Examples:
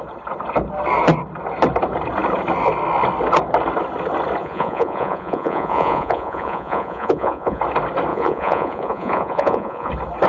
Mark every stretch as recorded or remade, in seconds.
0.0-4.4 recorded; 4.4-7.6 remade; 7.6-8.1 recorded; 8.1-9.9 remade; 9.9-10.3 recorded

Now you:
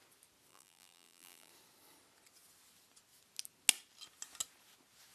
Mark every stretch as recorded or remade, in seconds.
0.0-0.5 recorded; 0.5-1.5 remade; 1.5-5.1 recorded

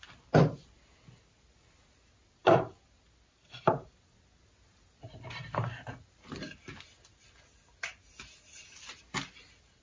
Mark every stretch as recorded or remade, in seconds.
0.0-9.8 recorded

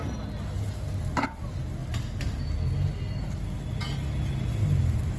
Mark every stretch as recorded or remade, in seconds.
0.0-5.2 recorded